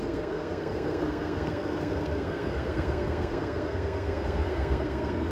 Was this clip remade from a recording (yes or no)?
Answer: yes